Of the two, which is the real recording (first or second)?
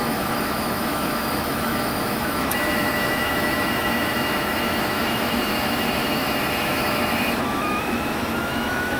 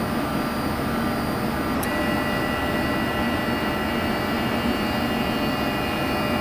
second